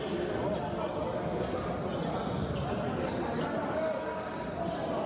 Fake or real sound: real